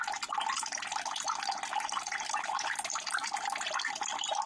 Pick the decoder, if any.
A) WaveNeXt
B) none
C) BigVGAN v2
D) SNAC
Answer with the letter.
B